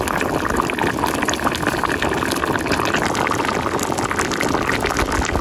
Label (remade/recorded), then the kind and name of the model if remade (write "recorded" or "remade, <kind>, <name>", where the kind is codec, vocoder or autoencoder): recorded